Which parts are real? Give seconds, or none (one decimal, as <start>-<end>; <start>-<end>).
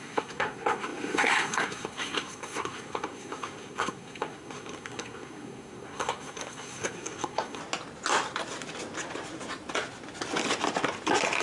7.6-11.4